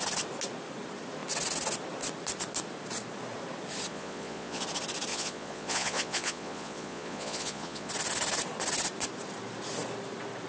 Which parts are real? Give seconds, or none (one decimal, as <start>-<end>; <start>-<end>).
0.0-3.9; 4.6-5.1; 7.9-10.5